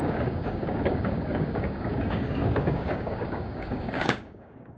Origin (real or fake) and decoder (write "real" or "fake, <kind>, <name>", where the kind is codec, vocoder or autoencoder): fake, codec, DAC